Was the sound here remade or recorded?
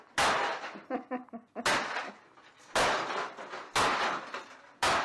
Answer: recorded